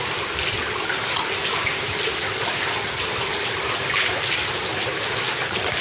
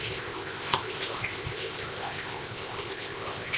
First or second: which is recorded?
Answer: first